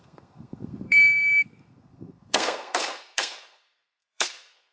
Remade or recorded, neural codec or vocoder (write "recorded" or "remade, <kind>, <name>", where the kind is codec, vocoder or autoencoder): remade, codec, SNAC